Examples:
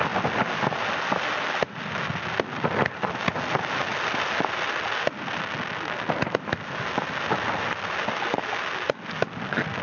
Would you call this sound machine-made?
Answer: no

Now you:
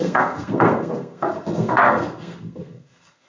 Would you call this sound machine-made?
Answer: yes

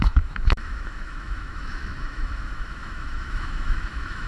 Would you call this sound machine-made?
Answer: yes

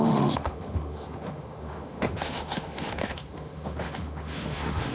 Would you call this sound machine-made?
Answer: yes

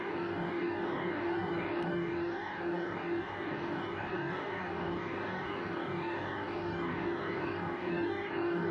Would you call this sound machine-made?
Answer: yes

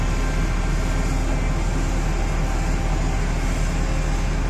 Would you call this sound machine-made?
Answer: no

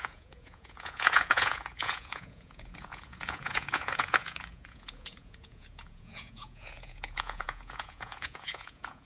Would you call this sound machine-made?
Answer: yes